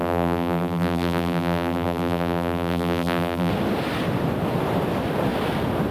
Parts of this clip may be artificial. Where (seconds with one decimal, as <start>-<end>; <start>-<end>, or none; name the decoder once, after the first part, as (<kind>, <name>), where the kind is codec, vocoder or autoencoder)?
0.0-3.5 (vocoder, BigVGAN v2)